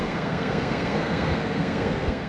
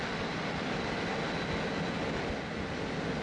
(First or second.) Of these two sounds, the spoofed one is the first